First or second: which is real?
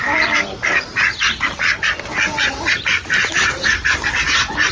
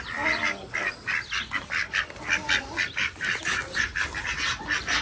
second